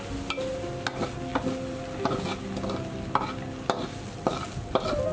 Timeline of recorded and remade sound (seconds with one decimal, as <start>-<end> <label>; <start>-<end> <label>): 0.0-5.1 recorded